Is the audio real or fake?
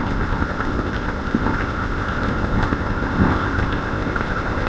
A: fake